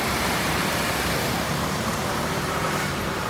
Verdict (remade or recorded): remade